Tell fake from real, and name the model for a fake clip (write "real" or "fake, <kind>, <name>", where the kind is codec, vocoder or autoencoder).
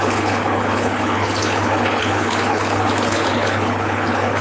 fake, codec, HILCodec